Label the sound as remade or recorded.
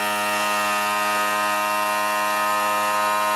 recorded